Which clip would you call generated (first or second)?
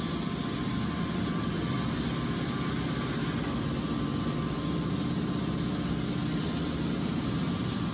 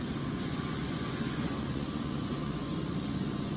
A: second